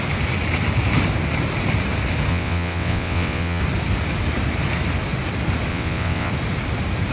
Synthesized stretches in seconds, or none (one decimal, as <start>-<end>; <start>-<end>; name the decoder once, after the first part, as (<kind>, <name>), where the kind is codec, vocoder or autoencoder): 2.3-3.6 (vocoder, WaveNeXt); 5.7-6.3